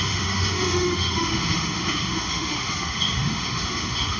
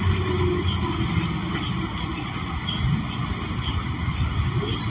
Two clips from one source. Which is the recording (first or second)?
second